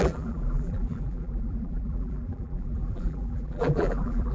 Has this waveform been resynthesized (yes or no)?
yes